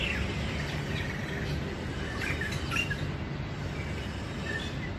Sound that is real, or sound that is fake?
real